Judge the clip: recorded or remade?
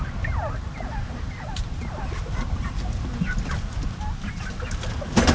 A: recorded